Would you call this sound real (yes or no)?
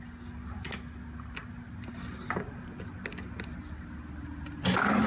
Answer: yes